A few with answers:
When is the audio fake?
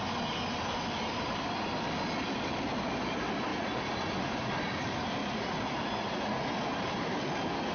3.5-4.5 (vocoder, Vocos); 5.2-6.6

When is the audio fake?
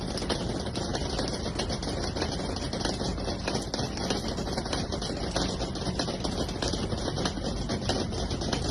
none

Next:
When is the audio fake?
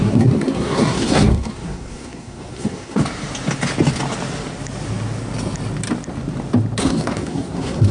0.0-3.0 (codec, SNAC); 6.8-7.9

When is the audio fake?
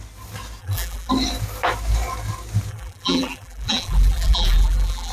0.6-1.1 (vocoder, BigVGAN v2); 2.7-5.1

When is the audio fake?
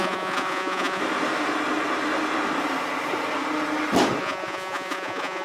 0.0-1.0 (vocoder, Vocos); 4.2-5.4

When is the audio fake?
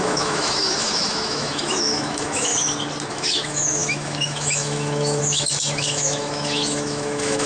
0.0-2.5 (autoencoder, DAC-VAE); 3.1-7.5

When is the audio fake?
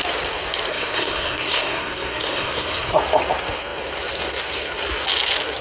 0.7-2.9 (codec, SNAC)